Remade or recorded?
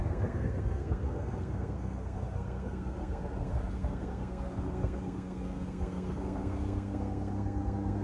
remade